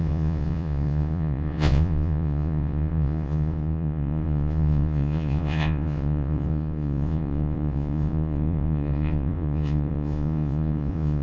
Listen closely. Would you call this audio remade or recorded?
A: remade